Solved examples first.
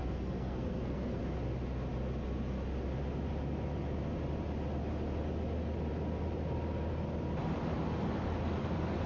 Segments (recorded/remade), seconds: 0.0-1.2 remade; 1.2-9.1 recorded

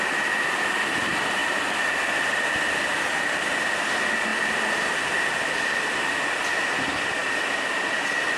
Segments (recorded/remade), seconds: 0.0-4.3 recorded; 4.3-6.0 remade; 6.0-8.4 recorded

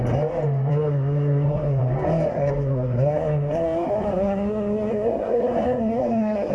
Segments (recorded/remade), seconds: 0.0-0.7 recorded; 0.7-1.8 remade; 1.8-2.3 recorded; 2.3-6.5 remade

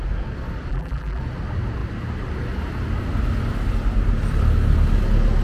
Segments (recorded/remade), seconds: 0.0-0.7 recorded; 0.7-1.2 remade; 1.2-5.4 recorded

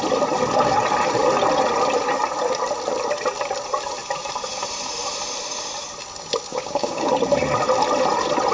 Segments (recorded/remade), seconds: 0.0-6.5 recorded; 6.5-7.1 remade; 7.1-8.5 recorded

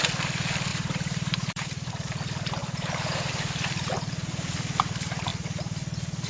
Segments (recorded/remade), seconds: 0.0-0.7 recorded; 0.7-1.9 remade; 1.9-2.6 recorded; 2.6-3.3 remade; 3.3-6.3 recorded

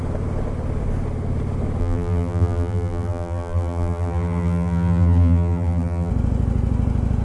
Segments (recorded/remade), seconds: 0.0-1.8 recorded; 1.8-6.1 remade; 6.1-7.2 recorded

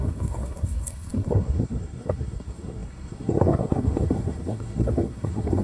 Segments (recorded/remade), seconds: 0.0-5.6 remade